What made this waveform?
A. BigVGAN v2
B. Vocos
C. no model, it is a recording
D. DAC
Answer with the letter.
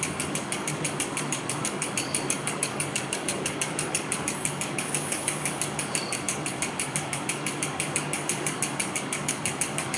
D